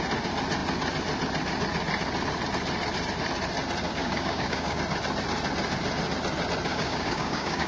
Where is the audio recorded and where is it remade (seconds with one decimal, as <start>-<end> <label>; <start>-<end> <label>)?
0.0-4.0 recorded; 4.0-4.8 remade; 4.8-6.7 recorded; 6.7-7.7 remade